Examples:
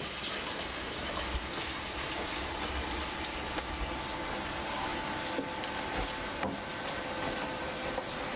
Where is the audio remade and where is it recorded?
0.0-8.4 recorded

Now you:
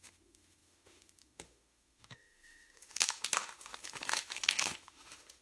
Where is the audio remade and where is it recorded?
0.0-5.4 remade

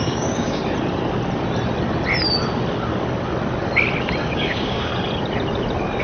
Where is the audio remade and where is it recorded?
0.0-0.6 remade; 0.6-4.2 recorded; 4.2-4.9 remade; 4.9-6.0 recorded